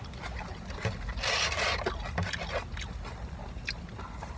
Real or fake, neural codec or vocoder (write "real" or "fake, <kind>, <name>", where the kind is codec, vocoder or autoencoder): real